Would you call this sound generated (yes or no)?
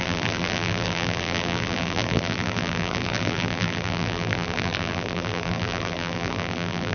yes